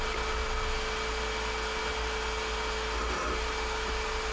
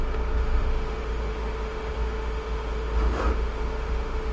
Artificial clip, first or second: second